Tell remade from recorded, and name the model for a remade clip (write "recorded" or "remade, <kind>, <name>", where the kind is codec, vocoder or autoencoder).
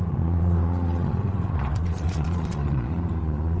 remade, vocoder, Vocos